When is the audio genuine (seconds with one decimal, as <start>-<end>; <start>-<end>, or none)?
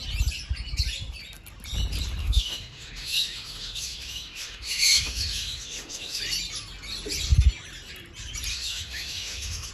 0.0-2.2; 6.2-8.5